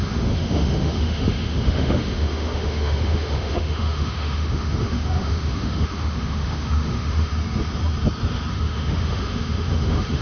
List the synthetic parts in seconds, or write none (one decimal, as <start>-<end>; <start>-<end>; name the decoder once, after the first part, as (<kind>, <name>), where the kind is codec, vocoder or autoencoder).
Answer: 0.0-7.3 (autoencoder, DAC-VAE); 8.5-10.2